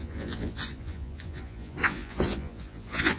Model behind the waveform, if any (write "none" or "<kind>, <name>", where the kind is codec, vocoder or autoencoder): vocoder, Vocos